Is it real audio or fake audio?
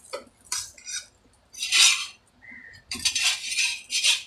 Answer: fake